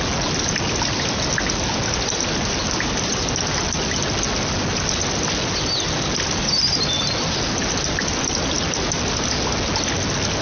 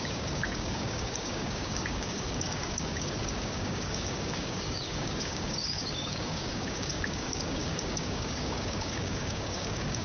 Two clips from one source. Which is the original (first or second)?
first